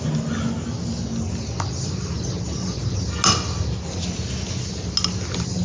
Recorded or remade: recorded